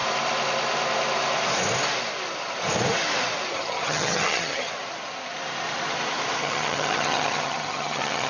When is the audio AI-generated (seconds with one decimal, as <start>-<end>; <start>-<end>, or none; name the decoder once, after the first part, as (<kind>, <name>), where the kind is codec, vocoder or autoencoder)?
3.5-4.7 (vocoder, HiFi-GAN); 6.4-8.3